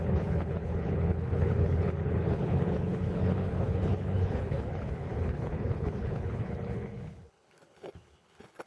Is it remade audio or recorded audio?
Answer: remade